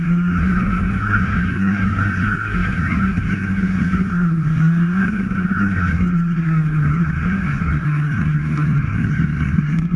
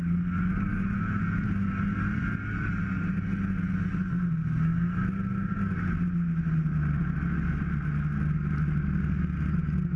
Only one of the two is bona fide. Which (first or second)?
second